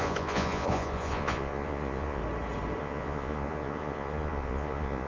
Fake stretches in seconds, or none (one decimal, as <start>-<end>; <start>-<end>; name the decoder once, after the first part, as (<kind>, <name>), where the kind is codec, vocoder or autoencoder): 0.0-2.2 (vocoder, Vocos); 2.8-5.1